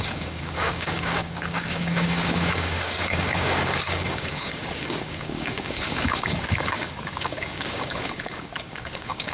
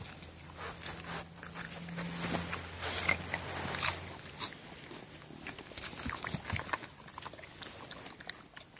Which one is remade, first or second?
first